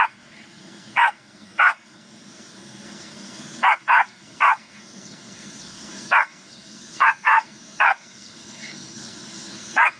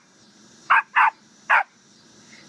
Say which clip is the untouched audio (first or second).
second